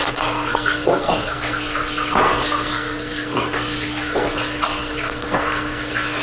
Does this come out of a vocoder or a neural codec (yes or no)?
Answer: yes